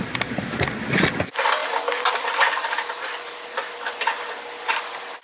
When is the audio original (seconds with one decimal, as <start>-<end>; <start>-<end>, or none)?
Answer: 0.0-5.2